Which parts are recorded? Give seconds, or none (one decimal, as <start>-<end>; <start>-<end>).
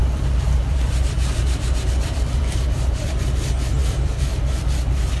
3.1-3.8; 4.3-5.2